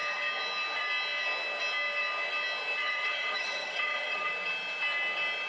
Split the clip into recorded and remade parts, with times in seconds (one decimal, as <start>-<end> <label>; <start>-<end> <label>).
0.0-2.8 recorded; 2.8-4.3 remade; 4.3-5.5 recorded